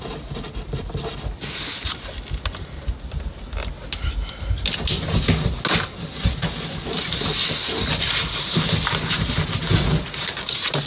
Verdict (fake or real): real